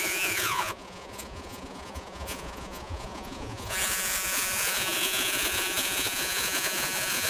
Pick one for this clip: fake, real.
fake